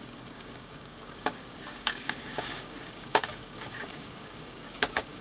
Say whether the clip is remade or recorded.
remade